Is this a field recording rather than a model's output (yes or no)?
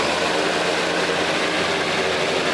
yes